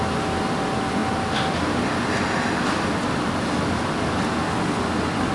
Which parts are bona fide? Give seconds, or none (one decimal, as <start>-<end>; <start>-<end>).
0.0-5.3